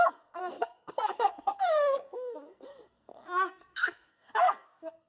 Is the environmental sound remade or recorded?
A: remade